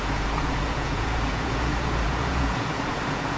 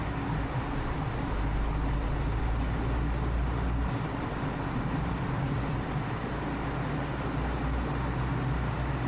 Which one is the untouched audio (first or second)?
second